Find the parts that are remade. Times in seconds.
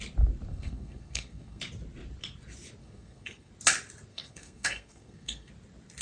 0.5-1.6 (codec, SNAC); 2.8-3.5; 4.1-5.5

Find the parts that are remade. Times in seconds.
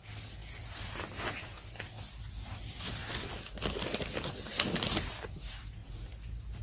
none